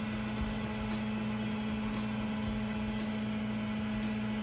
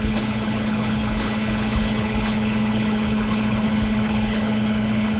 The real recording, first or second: first